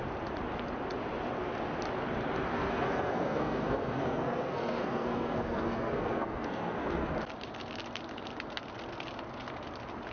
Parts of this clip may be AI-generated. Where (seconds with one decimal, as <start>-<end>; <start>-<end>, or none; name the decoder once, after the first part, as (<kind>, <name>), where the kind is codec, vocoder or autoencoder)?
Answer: 2.5-7.1 (codec, SNAC)